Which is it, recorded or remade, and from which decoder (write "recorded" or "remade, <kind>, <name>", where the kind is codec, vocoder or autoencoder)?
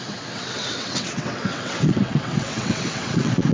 remade, vocoder, WaveNeXt